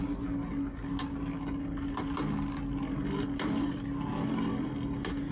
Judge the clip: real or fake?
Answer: real